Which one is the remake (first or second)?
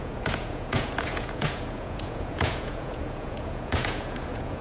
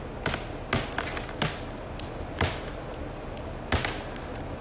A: first